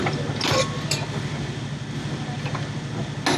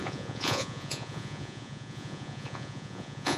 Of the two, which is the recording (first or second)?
first